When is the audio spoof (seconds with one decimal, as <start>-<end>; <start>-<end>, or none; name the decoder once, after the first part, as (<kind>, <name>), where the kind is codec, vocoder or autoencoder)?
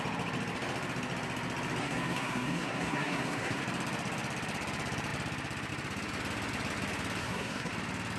1.8-3.6 (codec, SNAC); 7.2-7.7